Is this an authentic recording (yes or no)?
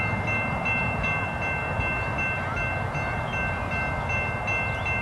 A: yes